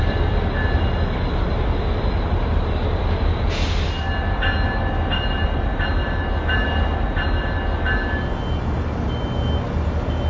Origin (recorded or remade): recorded